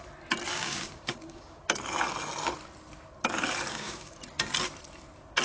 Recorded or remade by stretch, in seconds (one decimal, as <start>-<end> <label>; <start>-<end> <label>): 0.0-0.5 recorded; 0.5-1.6 remade; 1.6-3.7 recorded; 3.7-4.2 remade; 4.2-5.4 recorded